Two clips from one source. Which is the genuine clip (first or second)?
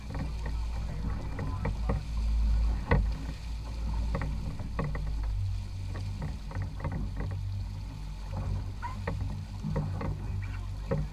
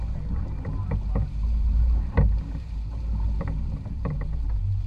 first